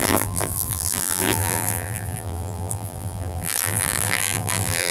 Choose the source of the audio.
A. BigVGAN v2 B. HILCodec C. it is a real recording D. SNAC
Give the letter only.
A